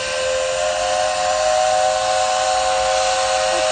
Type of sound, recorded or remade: recorded